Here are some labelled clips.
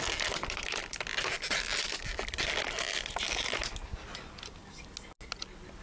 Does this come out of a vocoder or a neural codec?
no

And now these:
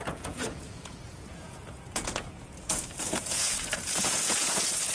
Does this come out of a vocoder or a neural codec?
yes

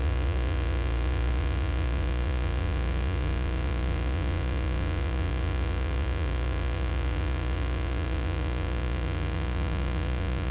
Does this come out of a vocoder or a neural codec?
yes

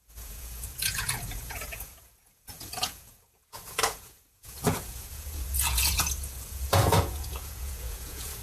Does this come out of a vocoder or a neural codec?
yes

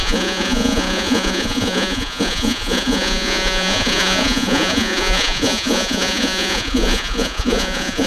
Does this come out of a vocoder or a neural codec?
yes